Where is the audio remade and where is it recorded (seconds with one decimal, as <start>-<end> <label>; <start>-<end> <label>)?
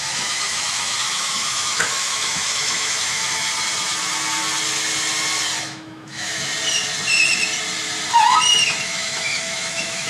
0.0-3.5 remade; 3.5-5.6 recorded; 5.6-6.5 remade; 6.5-8.8 recorded; 8.8-10.1 remade